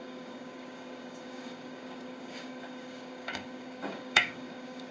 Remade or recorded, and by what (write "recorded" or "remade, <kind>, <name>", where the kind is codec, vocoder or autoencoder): remade, codec, DAC